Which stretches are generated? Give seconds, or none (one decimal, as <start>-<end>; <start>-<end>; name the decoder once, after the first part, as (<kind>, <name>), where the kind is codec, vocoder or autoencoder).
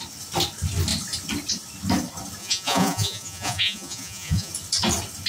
2.4-4.5 (vocoder, Vocos)